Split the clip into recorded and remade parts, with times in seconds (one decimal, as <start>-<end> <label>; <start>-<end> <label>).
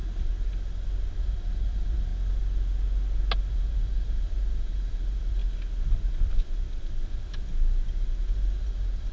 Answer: 0.0-1.2 recorded; 1.2-2.1 remade; 2.1-3.5 recorded; 3.5-5.4 remade; 5.4-8.6 recorded; 8.6-9.1 remade